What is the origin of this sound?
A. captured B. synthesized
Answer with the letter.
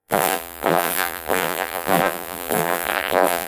B